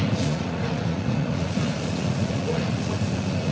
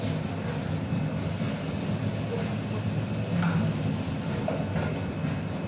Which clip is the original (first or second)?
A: second